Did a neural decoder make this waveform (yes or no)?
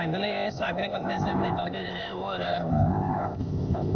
yes